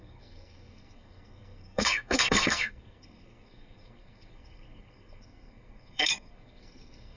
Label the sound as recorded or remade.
remade